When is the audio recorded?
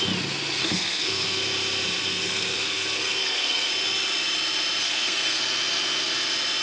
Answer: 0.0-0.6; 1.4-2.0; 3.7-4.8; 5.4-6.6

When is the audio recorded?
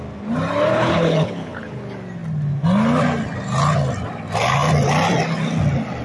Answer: 0.0-0.7; 1.8-6.0